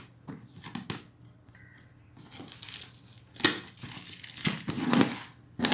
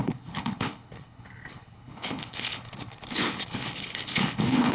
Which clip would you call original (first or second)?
first